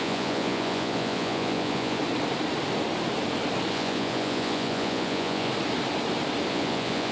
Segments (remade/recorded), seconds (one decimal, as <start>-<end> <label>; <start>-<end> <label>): 0.0-2.0 remade; 2.0-3.7 recorded; 3.7-5.5 remade; 5.5-6.5 recorded; 6.5-7.1 remade